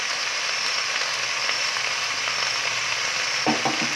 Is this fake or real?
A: real